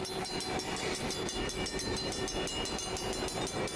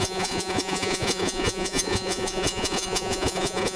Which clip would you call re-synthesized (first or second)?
second